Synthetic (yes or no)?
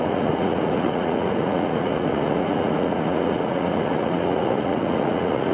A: yes